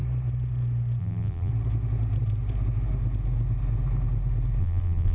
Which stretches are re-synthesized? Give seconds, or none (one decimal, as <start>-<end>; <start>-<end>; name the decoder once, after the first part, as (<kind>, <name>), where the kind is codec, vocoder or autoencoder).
1.0-1.5 (vocoder, BigVGAN v2); 4.6-5.1